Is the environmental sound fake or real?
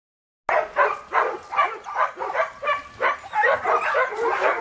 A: real